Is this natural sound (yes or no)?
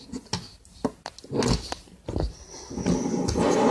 yes